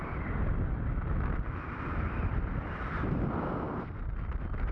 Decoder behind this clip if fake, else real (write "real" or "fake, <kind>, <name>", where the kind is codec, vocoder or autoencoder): real